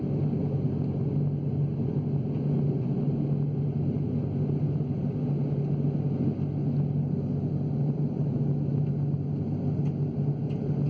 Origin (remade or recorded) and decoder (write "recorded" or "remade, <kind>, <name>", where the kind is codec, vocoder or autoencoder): recorded